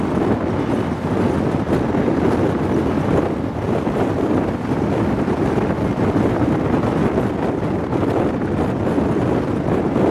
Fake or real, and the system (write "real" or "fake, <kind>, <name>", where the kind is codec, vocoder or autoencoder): real